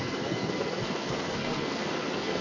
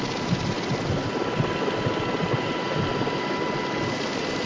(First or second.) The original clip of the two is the second